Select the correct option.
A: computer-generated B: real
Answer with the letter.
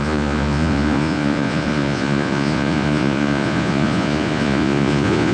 A